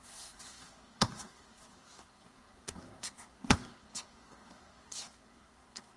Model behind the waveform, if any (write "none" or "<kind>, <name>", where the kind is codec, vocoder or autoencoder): codec, SNAC